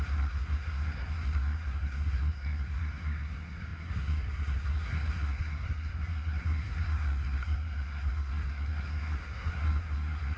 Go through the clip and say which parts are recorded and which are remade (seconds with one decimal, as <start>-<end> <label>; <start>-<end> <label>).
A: 0.0-10.4 remade